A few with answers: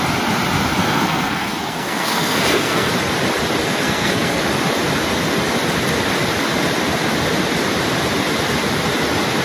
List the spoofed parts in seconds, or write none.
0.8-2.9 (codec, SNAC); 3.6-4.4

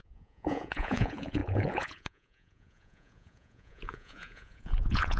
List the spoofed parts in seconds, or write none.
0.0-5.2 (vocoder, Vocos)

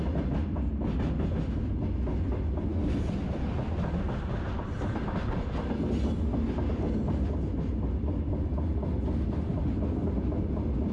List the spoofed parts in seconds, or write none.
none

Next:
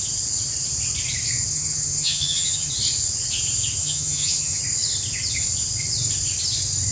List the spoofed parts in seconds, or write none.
1.5-2.7 (vocoder, HiFi-GAN); 3.8-4.6